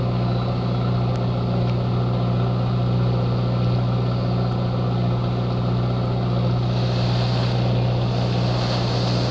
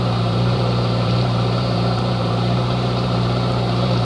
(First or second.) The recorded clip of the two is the first